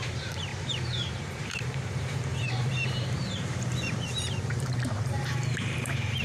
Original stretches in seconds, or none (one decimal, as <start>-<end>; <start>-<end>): none